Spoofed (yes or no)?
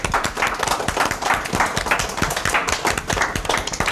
no